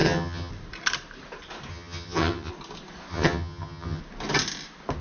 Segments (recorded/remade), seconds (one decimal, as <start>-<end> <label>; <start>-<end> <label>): 0.0-0.5 remade; 0.5-1.7 recorded; 1.7-2.5 remade; 2.5-3.1 recorded; 3.1-4.0 remade; 4.0-5.0 recorded